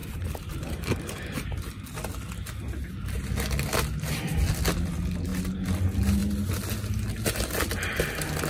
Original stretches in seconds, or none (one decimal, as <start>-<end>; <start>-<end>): 1.7-8.5